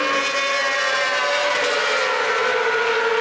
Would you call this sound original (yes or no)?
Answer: yes